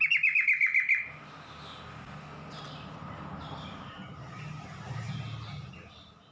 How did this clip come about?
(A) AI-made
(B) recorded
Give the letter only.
B